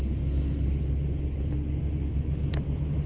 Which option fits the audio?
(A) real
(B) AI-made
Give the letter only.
A